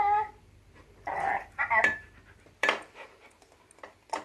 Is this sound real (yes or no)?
no